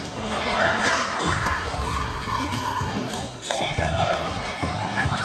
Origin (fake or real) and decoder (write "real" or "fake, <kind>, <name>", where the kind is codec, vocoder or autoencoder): fake, codec, SNAC